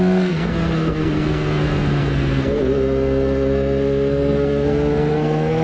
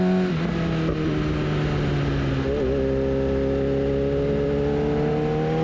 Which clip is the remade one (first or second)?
first